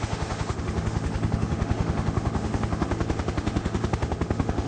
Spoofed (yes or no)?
yes